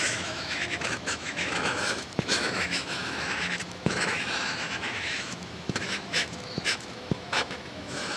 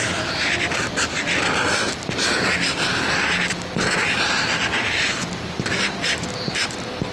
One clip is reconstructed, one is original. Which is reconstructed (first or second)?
first